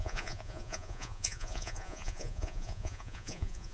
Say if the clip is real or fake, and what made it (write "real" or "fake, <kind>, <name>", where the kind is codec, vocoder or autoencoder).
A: fake, vocoder, Vocos